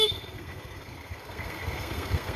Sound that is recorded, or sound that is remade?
remade